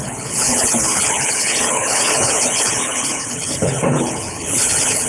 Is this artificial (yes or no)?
yes